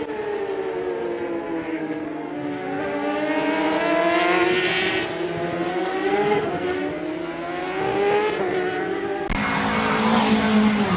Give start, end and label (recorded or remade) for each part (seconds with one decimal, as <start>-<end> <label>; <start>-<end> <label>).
0.0-1.7 recorded; 1.7-2.8 remade; 2.8-5.7 recorded; 5.7-6.8 remade; 6.8-11.0 recorded